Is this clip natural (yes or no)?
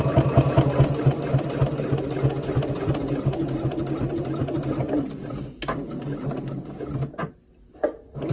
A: yes